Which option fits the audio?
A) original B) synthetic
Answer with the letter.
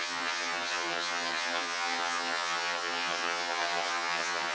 B